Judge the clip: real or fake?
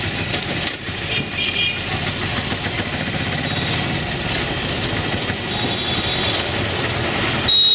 real